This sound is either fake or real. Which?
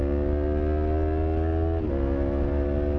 real